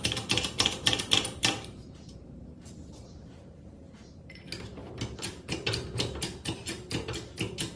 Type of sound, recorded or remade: remade